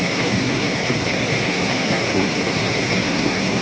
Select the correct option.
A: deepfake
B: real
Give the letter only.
A